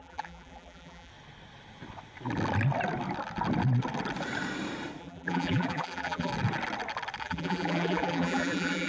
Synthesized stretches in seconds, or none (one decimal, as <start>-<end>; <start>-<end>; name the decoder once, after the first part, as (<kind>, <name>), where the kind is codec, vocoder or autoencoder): 0.0-1.1 (vocoder, BigVGAN v2); 5.0-6.3; 7.2-8.9